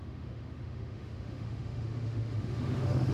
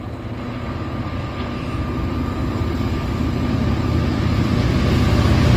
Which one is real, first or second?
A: second